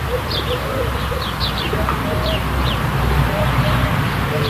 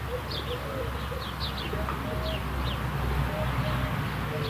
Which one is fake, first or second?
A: first